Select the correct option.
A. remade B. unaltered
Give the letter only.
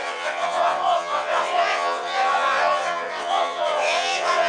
A